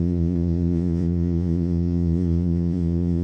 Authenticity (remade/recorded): remade